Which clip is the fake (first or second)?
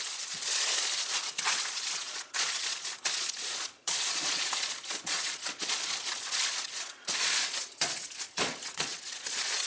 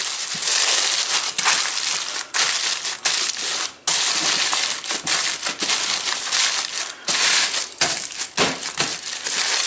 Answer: first